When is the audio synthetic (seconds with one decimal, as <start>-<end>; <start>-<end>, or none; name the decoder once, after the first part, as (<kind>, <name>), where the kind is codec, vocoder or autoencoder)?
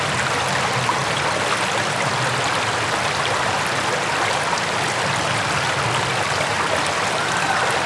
none